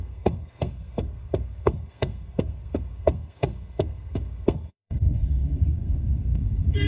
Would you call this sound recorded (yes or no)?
no